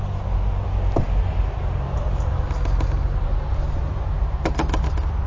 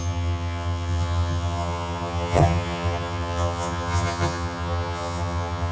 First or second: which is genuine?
first